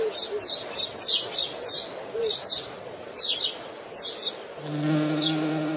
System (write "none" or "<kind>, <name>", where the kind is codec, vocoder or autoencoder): none